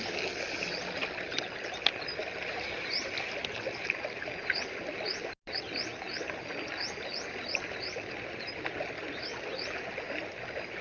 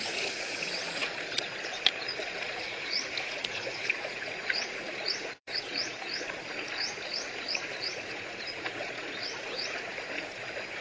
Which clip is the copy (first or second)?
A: second